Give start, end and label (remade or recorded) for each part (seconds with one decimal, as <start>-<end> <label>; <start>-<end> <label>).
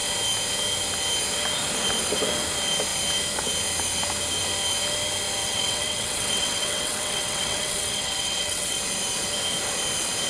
0.0-5.4 recorded; 5.4-8.8 remade; 8.8-10.3 recorded